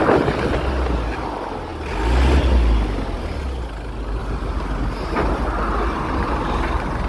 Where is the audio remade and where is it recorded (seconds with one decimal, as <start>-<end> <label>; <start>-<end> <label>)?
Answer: 0.0-7.1 recorded